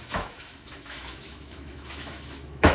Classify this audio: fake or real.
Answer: fake